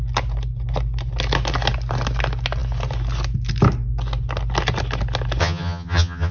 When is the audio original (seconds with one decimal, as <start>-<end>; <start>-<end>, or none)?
0.0-5.4